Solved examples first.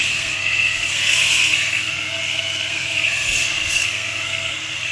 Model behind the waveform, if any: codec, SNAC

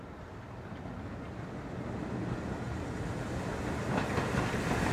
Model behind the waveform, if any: none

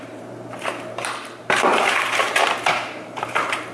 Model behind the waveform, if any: vocoder, BigVGAN v2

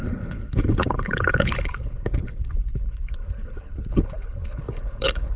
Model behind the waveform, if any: codec, HILCodec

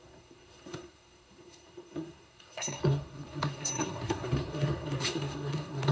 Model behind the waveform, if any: codec, SNAC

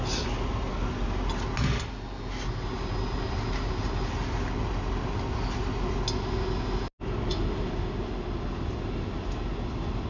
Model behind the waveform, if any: none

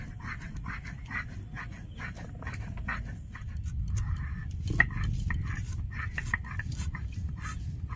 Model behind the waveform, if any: none